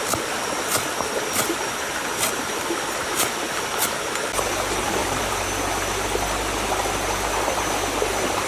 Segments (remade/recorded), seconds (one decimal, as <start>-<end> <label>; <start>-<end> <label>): 0.0-5.0 recorded; 5.0-5.7 remade; 5.7-8.5 recorded